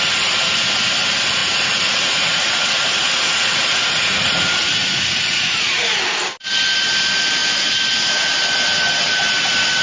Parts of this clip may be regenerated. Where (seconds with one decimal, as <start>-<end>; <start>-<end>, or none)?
1.4-6.0